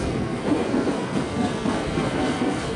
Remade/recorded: remade